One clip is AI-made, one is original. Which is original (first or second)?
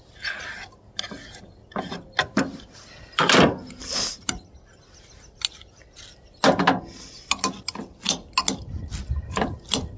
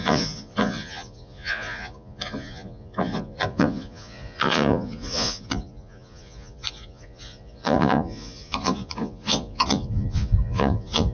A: first